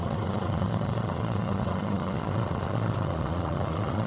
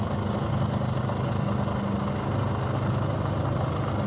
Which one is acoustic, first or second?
second